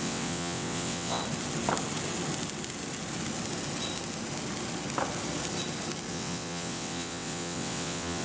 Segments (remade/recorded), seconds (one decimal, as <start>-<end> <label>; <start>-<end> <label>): 0.0-1.2 remade; 1.2-6.1 recorded; 6.1-8.2 remade